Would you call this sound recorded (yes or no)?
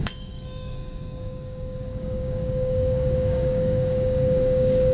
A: no